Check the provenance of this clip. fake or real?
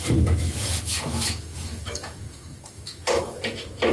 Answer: fake